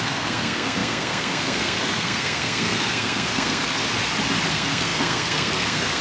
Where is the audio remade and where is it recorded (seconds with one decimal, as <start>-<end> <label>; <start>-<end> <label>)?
0.0-3.8 remade; 3.8-4.5 recorded; 4.5-6.0 remade